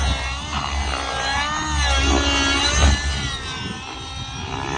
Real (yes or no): yes